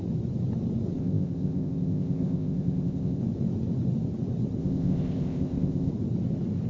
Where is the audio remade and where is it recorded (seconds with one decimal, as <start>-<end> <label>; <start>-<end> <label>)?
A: 0.0-1.0 recorded; 1.0-3.2 remade; 3.2-4.6 recorded; 4.6-5.9 remade; 5.9-6.7 recorded